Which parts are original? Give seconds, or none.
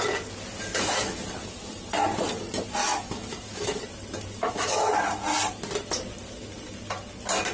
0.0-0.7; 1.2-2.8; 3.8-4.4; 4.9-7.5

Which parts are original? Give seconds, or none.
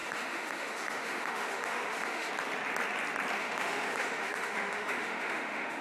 2.3-3.4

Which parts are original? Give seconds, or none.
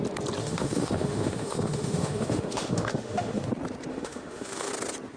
0.0-0.4; 3.5-3.9; 4.7-5.2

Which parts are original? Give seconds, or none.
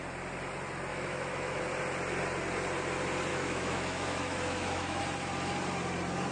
0.0-0.9; 1.6-3.3; 5.0-6.3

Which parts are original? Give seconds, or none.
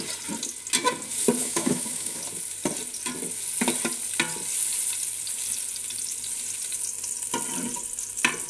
0.0-1.4; 2.2-8.5